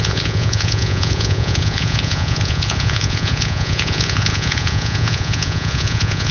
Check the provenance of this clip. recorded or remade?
remade